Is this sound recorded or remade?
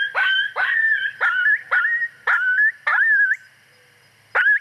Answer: recorded